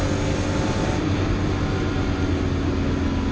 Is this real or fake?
real